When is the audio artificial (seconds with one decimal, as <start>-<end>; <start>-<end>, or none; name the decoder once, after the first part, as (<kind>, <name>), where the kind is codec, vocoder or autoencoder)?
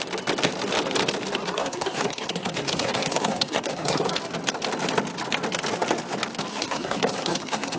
1.4-4.1 (codec, SNAC); 6.5-7.8